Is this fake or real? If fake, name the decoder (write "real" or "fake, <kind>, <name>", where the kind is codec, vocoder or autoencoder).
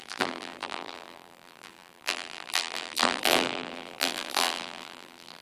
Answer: fake, vocoder, BigVGAN v2